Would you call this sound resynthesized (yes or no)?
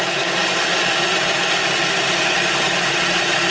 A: no